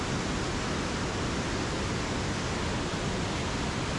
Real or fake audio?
real